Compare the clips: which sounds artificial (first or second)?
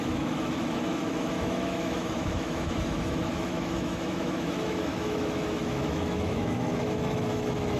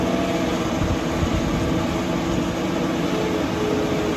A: first